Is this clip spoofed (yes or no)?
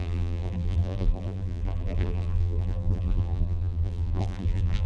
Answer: yes